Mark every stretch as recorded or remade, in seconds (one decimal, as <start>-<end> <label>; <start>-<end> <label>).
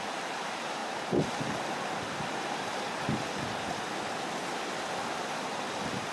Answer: 0.0-6.1 recorded